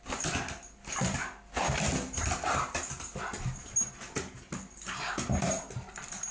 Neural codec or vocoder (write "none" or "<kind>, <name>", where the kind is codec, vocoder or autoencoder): none